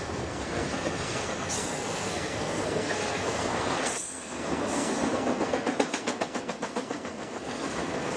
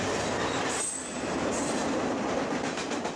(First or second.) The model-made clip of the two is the first